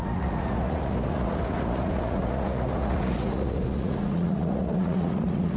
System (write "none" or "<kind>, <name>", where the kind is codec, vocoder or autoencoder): vocoder, Vocos